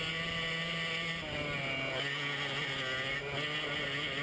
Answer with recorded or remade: recorded